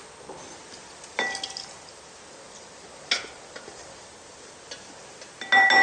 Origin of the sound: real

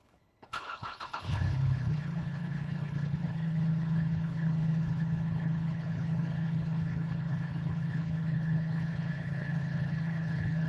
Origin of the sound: fake